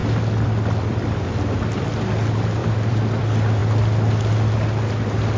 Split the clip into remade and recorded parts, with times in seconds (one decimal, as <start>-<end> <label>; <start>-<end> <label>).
0.0-1.3 remade; 1.3-2.6 recorded; 2.6-3.2 remade; 3.2-5.4 recorded